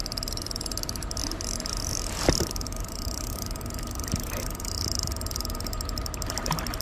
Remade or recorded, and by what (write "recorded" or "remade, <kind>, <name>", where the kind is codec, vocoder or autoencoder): recorded